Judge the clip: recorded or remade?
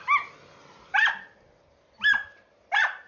recorded